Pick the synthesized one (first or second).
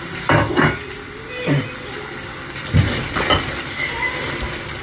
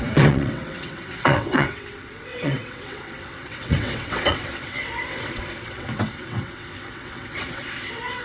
second